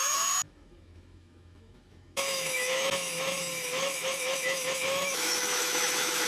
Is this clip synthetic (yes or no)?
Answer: yes